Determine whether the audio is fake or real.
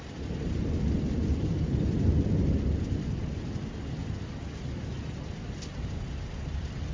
real